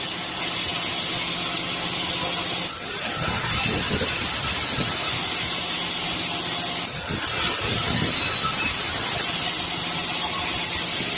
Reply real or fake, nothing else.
real